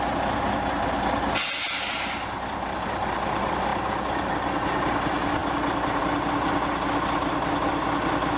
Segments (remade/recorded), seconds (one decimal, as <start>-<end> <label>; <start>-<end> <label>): 0.0-8.4 recorded